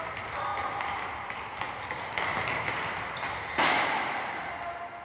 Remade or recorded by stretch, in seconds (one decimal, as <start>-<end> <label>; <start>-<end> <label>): 0.0-5.0 recorded